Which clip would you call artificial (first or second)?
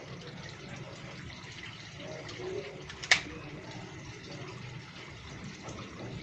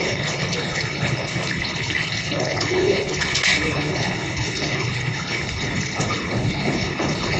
second